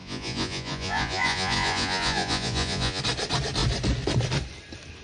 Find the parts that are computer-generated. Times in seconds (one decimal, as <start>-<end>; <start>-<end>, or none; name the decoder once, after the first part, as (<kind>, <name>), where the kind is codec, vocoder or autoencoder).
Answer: 0.0-3.0 (vocoder, Vocos)